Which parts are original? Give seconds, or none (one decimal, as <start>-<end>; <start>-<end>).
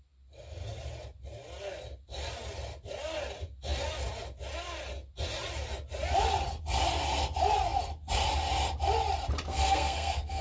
0.0-9.5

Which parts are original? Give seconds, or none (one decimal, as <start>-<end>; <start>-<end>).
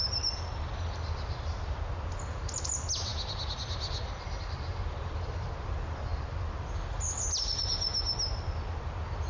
0.0-9.3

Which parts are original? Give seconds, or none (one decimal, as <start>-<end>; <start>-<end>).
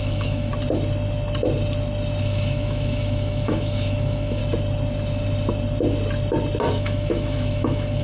0.5-2.2; 4.4-6.7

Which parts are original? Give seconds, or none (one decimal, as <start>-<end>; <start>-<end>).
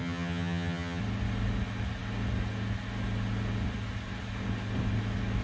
1.0-5.4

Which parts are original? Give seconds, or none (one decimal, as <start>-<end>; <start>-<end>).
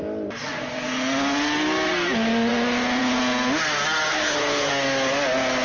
0.0-4.1; 4.7-5.6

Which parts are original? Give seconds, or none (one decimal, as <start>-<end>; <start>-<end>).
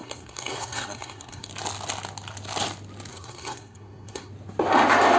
1.5-3.1; 4.3-5.2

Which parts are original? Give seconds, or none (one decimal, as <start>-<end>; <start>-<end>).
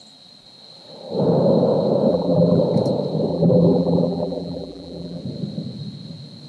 0.0-2.1; 2.6-3.3; 5.2-6.5